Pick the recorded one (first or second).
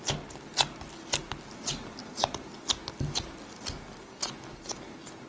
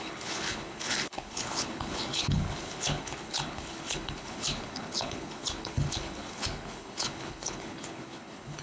first